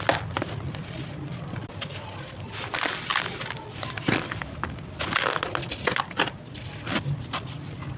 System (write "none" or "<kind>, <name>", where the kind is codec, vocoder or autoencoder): none